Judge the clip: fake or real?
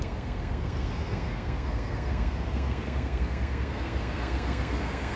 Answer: fake